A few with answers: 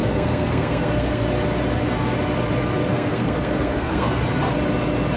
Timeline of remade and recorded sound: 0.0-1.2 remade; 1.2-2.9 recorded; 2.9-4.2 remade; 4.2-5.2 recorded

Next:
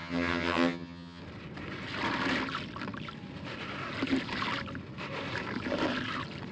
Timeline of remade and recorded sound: 0.0-1.2 remade; 1.2-6.5 recorded